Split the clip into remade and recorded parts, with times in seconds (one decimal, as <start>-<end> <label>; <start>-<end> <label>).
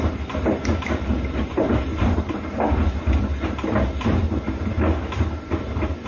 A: 0.0-1.5 recorded; 1.5-2.4 remade; 2.4-6.1 recorded